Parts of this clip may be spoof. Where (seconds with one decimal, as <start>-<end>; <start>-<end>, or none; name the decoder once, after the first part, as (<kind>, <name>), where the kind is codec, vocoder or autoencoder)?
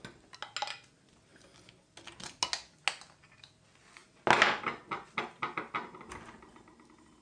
none